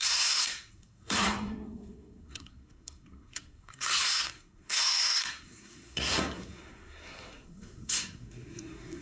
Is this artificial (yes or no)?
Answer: yes